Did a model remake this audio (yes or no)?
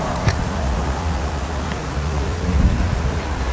yes